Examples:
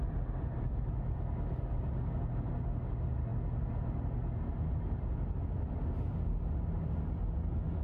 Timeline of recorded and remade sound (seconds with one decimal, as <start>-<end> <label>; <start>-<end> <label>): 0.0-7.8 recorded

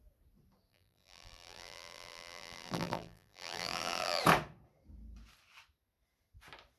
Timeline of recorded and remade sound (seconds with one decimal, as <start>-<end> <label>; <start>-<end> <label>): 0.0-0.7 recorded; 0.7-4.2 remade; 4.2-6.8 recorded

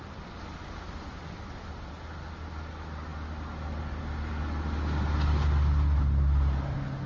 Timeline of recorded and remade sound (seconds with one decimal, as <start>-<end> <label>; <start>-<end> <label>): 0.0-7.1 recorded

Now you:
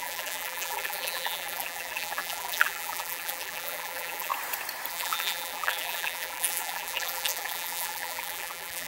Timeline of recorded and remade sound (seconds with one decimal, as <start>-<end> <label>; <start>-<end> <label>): 0.0-4.3 remade; 4.3-4.9 recorded; 4.9-8.9 remade